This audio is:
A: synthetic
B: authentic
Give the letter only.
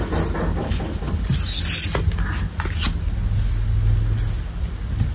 B